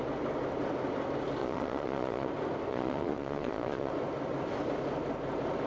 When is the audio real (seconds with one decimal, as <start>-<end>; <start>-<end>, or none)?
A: 0.0-1.4; 2.3-2.7; 3.9-5.7